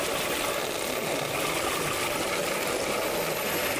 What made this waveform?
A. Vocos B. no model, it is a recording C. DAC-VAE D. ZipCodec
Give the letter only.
B